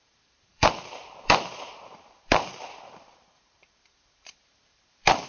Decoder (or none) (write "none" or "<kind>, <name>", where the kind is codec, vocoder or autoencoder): vocoder, BigVGAN v2